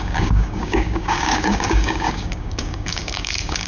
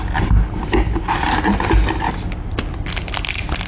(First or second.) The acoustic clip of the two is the second